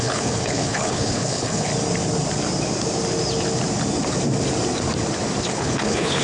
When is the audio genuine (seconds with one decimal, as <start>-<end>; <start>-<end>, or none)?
1.7-5.4